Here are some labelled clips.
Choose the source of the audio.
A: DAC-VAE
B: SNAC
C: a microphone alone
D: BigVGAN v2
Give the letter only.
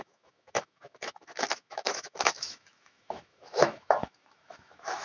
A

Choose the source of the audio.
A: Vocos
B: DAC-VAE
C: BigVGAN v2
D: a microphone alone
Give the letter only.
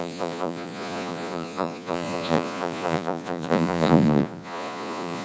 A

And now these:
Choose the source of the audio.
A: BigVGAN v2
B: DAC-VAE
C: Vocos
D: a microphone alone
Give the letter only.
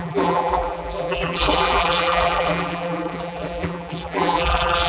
A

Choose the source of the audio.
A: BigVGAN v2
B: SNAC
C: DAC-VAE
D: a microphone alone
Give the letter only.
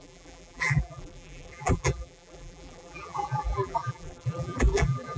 A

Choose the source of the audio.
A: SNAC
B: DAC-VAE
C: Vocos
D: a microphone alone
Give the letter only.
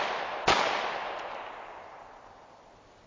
D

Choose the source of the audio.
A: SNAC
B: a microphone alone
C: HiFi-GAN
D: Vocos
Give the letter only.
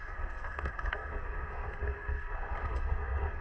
A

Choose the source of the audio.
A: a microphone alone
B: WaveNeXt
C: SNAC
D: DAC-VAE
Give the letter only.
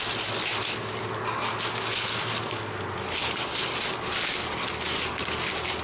A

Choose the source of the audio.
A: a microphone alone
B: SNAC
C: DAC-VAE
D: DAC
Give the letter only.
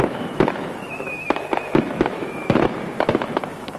C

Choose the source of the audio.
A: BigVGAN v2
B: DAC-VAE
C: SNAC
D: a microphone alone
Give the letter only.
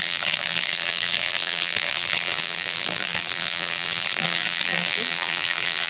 A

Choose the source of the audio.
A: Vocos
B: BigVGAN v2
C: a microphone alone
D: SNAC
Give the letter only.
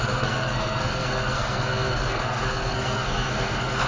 D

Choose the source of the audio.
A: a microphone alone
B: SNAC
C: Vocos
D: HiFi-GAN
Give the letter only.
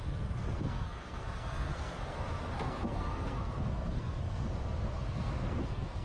B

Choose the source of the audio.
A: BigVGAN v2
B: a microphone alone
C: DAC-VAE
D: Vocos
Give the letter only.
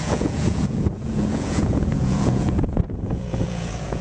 D